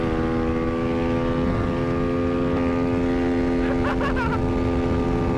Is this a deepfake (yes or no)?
no